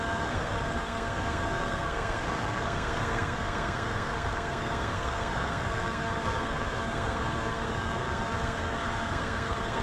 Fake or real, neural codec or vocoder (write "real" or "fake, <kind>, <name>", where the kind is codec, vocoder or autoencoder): fake, codec, SNAC